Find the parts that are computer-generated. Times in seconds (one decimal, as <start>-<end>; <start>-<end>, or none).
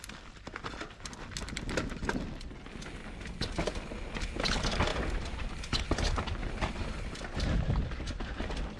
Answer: 4.9-5.5; 6.6-7.8